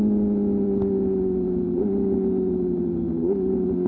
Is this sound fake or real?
real